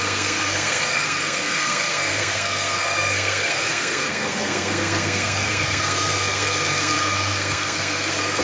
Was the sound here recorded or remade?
remade